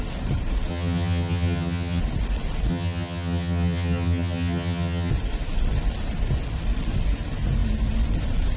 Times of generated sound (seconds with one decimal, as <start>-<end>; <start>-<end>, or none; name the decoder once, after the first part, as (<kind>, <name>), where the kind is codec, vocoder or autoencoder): 0.7-2.0 (vocoder, HiFi-GAN); 2.7-5.1